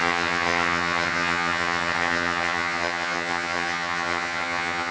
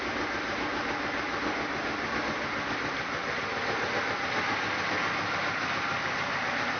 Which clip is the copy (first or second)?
first